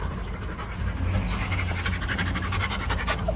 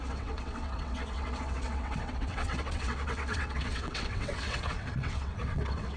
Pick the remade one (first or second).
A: second